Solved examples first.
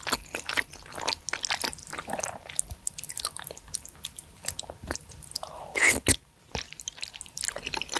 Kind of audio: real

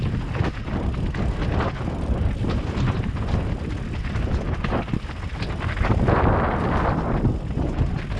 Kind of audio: real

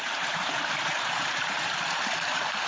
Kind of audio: fake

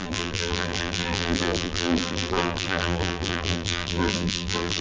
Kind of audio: fake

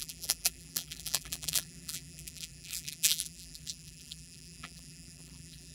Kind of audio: fake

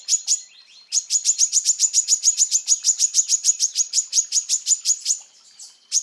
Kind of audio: fake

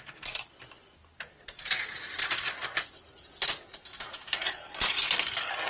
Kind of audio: real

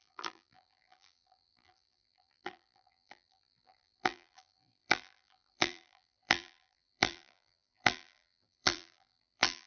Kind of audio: fake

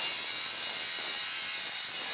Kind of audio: real